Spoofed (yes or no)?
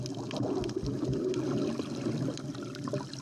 no